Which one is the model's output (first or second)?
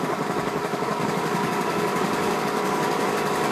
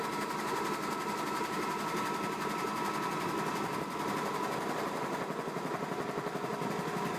first